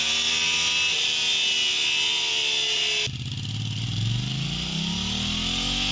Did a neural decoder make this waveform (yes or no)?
no